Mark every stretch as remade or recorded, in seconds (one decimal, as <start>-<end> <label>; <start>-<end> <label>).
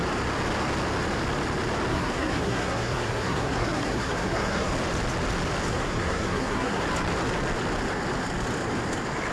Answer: 0.0-1.9 recorded; 1.9-4.7 remade; 4.7-5.7 recorded; 5.7-6.8 remade; 6.8-9.3 recorded